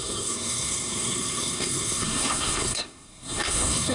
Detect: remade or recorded remade